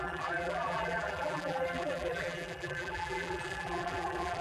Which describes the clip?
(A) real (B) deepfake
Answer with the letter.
B